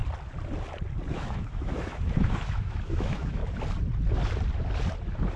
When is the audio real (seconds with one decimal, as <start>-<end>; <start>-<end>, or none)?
0.0-1.1; 3.4-5.4